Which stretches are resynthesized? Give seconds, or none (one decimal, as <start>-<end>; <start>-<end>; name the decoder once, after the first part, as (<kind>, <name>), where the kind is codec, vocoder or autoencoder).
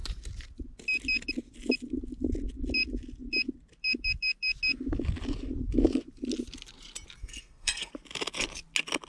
7.2-7.9 (codec, SNAC)